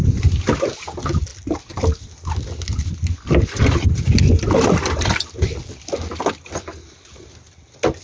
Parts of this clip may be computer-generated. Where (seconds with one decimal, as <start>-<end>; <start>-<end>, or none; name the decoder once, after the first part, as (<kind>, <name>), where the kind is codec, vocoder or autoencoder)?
none